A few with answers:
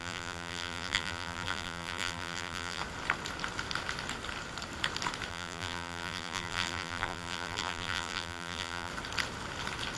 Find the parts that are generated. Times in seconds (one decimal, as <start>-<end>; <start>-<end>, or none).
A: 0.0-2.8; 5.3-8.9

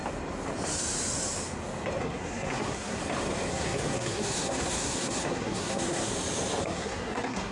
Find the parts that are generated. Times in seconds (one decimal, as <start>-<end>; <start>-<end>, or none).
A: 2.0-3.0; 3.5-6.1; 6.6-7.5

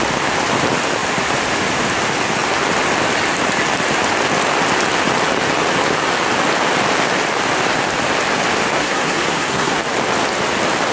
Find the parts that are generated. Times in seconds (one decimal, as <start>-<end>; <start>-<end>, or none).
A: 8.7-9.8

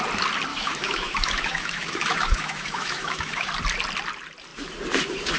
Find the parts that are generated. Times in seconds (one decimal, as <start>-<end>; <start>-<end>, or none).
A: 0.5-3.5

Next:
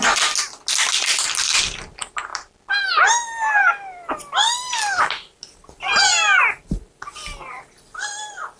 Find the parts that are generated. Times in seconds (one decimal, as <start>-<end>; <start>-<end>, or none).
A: none

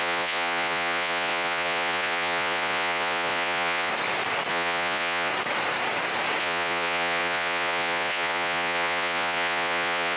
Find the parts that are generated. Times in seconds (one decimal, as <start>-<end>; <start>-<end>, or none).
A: 0.0-3.9; 4.5-5.3; 6.4-10.2

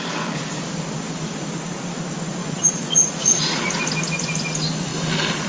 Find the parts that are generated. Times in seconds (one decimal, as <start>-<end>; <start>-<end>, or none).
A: 2.4-3.7

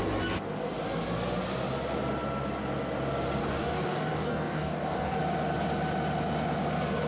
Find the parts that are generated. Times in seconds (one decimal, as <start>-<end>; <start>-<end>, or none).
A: 3.4-5.2